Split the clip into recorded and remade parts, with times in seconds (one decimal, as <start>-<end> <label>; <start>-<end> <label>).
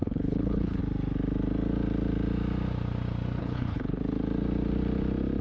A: 0.0-0.8 remade; 0.8-3.4 recorded; 3.4-4.0 remade; 4.0-5.4 recorded